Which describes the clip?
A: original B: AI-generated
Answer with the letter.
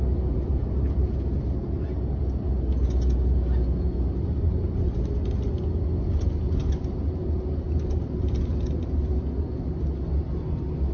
A